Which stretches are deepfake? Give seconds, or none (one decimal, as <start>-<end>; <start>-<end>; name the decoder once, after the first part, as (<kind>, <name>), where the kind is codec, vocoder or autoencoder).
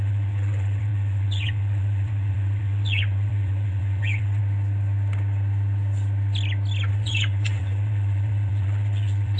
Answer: 0.0-4.4 (vocoder, WaveNeXt); 6.9-9.4